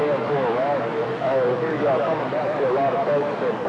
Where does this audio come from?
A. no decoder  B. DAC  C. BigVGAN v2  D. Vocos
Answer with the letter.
B